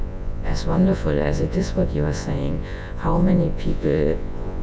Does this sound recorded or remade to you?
remade